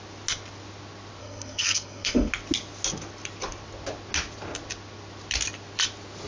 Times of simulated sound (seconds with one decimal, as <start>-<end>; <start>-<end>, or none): 1.2-2.3